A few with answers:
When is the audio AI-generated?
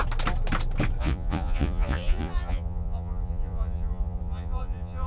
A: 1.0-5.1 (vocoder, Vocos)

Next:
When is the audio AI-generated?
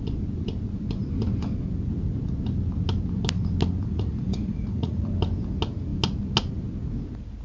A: 3.8-5.1 (vocoder, Vocos)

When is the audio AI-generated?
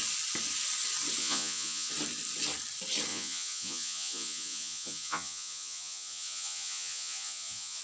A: 1.2-1.9 (vocoder, Vocos); 3.1-7.8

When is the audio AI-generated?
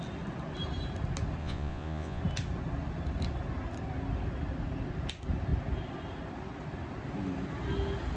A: 1.4-2.2 (vocoder, Vocos)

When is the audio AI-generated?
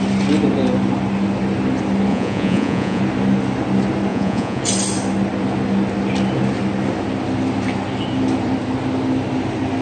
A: 2.1-3.0 (vocoder, Vocos); 4.1-4.6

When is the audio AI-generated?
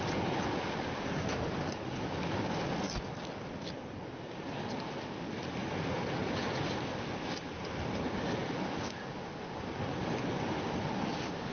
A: none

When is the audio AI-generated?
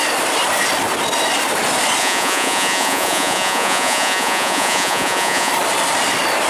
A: 2.0-5.5 (vocoder, Vocos)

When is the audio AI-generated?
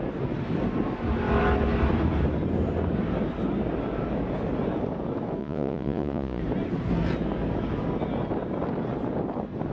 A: 5.4-6.4 (vocoder, Vocos)